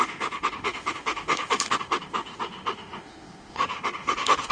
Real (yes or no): no